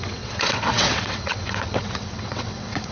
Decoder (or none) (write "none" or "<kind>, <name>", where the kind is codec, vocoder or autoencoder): vocoder, WaveNeXt